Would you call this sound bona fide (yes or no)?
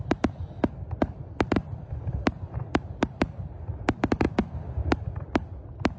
yes